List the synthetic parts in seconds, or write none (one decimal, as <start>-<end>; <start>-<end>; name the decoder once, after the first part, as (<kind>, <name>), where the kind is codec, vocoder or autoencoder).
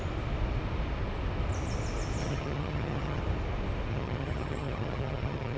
2.2-3.2 (vocoder, HiFi-GAN); 3.9-5.6